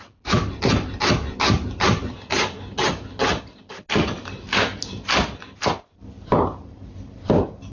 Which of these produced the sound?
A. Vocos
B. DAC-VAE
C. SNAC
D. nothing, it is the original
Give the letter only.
D